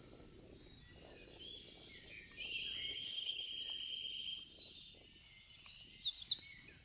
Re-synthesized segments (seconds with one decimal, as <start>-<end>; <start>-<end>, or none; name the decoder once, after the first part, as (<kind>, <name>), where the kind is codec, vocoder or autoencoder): 2.9-3.5 (codec, HILCodec)